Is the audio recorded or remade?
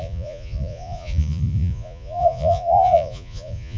remade